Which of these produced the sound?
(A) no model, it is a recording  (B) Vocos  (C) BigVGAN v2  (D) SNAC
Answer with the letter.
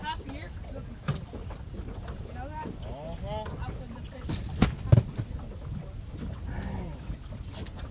A